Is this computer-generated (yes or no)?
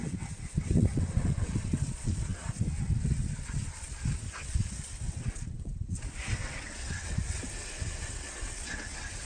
yes